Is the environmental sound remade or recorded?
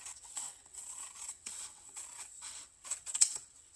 remade